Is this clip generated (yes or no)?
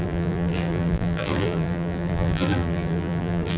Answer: yes